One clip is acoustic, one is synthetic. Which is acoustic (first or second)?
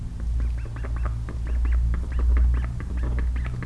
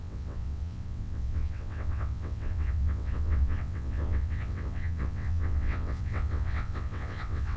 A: first